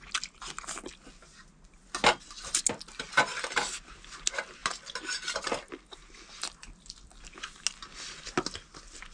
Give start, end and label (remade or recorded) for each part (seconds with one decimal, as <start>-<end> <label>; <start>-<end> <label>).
0.0-9.1 recorded